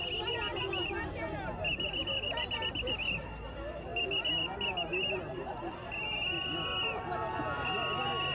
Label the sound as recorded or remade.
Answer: recorded